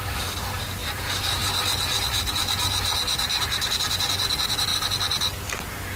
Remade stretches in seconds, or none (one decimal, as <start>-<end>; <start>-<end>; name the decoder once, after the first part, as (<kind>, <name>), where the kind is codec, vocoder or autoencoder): 0.8-1.4 (vocoder, BigVGAN v2)